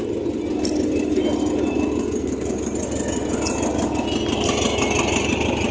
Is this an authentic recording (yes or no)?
yes